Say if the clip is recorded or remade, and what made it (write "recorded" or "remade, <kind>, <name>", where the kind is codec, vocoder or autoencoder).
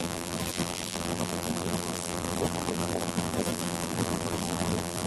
remade, vocoder, BigVGAN v2